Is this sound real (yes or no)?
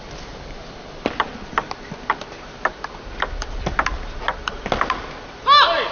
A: yes